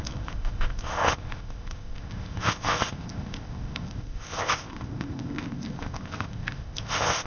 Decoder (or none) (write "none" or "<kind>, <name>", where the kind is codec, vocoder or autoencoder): codec, ZipCodec